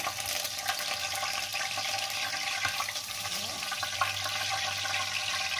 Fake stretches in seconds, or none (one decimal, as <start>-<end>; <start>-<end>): 1.5-4.6